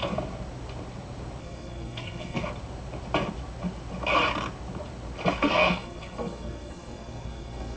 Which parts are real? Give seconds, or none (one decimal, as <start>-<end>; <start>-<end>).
0.0-1.4; 2.4-5.4